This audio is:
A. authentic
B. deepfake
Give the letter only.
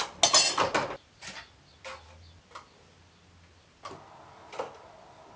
A